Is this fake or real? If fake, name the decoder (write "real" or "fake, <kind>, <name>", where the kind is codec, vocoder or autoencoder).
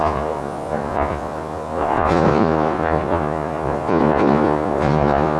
fake, vocoder, Vocos